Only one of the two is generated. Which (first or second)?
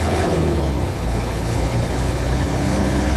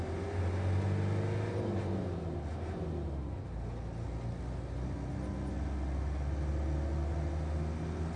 first